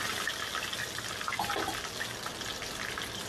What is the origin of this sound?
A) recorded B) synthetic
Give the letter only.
A